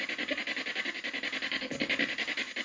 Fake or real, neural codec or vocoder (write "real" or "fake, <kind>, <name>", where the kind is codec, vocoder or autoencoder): real